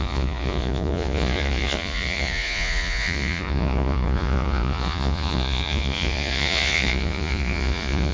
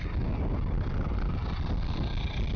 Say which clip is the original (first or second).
second